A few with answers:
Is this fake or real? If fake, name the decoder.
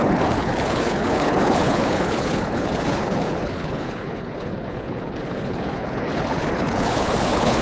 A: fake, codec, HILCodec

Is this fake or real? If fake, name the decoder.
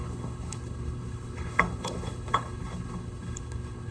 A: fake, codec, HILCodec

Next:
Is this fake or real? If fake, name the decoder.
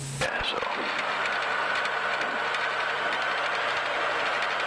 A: real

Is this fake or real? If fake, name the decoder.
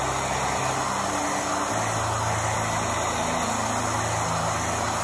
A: real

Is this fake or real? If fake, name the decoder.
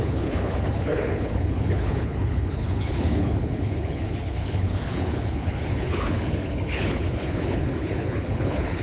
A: fake, codec, HILCodec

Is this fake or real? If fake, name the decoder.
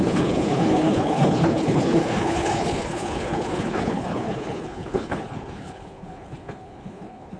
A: fake, codec, HILCodec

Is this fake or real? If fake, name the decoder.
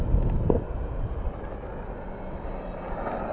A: real